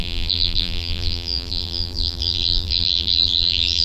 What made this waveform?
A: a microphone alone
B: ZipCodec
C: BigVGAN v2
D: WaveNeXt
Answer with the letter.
C